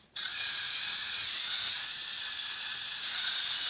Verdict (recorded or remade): remade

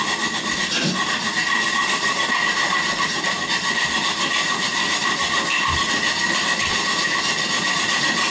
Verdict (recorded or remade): recorded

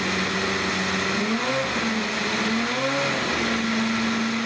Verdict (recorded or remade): recorded